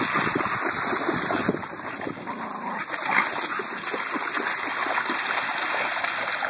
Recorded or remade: recorded